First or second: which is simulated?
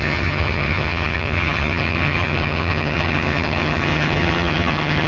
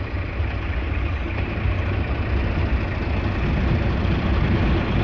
first